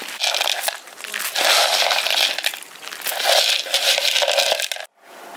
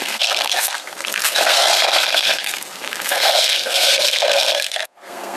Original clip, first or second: first